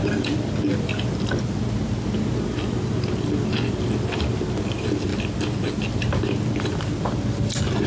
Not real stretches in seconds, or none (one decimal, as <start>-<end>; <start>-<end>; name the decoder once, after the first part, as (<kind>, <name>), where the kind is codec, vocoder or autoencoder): none